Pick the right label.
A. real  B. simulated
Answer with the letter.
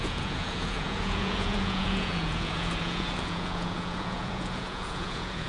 B